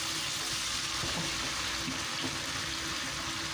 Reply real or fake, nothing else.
real